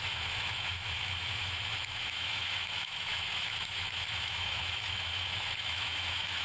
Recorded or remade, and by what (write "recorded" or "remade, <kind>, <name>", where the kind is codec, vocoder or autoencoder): remade, autoencoder, DAC-VAE